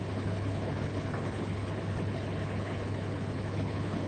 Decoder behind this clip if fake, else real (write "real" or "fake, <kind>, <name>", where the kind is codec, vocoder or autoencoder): fake, codec, HILCodec